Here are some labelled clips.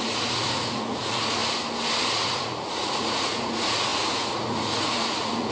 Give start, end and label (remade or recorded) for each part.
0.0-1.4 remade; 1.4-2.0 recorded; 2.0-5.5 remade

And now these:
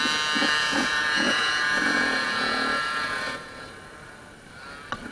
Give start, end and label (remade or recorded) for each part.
0.0-0.6 recorded; 0.6-3.7 remade; 3.7-5.1 recorded

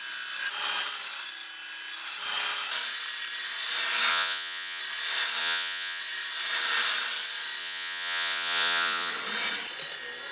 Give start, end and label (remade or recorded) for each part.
0.0-4.1 recorded; 4.1-4.8 remade; 4.8-5.4 recorded; 5.4-6.0 remade; 6.0-7.6 recorded; 7.6-9.1 remade; 9.1-10.3 recorded

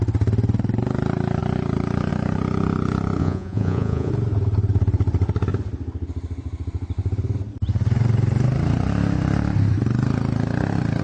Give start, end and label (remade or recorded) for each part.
0.0-3.2 recorded; 3.2-4.1 remade; 4.1-11.0 recorded

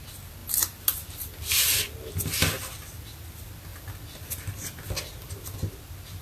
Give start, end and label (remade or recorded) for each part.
0.0-6.2 recorded

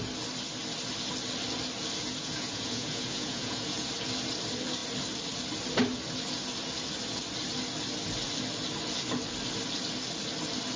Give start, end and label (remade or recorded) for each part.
0.0-2.2 recorded; 2.2-3.9 remade; 3.9-10.8 recorded

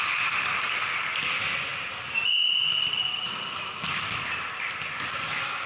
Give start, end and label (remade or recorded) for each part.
0.0-5.7 recorded

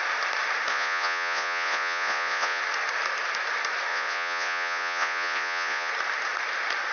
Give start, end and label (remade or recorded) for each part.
0.0-0.7 recorded; 0.7-2.6 remade; 2.6-3.9 recorded; 3.9-5.9 remade; 5.9-6.9 recorded